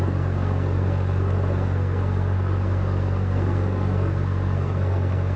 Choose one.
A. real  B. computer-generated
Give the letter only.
B